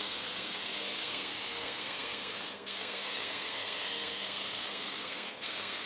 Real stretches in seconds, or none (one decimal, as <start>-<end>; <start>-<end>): none